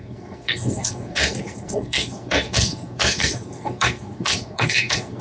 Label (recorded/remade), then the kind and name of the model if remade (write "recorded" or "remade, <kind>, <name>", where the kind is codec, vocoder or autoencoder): remade, codec, SNAC